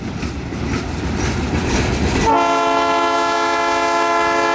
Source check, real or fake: real